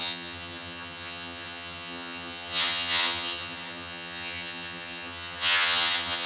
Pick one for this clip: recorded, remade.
remade